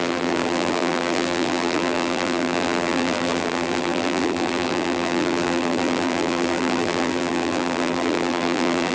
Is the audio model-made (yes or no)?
yes